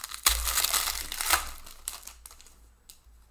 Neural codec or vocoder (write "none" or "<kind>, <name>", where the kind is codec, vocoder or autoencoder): none